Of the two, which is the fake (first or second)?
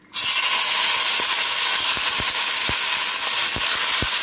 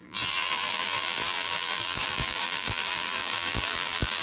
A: second